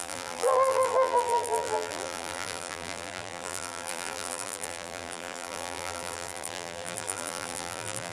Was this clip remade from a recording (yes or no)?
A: yes